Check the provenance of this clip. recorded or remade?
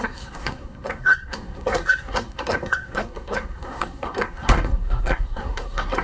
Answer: remade